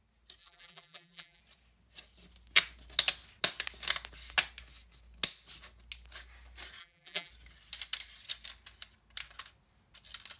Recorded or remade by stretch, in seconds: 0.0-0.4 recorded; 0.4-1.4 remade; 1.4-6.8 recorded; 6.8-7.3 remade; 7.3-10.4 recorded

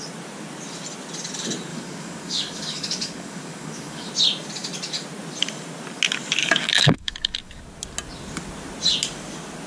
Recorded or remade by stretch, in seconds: 0.0-1.7 recorded; 1.7-4.1 remade; 4.1-6.4 recorded; 6.4-7.6 remade; 7.6-9.7 recorded

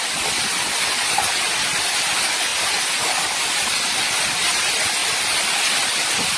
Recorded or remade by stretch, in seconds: 0.0-6.4 recorded

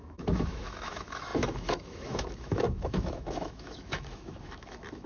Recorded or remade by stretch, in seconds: 0.0-5.1 remade

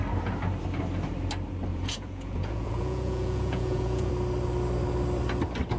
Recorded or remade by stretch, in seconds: 0.0-1.7 recorded; 1.7-4.1 remade; 4.1-5.8 recorded

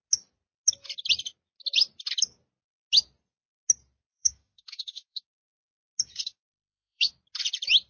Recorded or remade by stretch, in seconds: 0.0-4.1 recorded; 4.1-5.2 remade; 5.2-6.2 recorded; 6.2-7.1 remade; 7.1-7.9 recorded